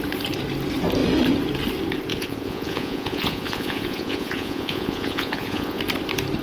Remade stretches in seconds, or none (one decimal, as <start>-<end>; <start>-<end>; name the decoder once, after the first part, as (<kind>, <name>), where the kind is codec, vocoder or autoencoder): 2.1-5.8 (vocoder, Vocos)